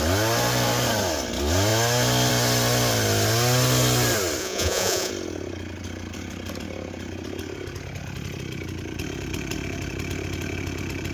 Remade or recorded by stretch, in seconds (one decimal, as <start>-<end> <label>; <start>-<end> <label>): 0.0-4.4 recorded; 4.4-5.1 remade; 5.1-11.1 recorded